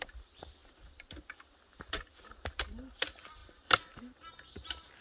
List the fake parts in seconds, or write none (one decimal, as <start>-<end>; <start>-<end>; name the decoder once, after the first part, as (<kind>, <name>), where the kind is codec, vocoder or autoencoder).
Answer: none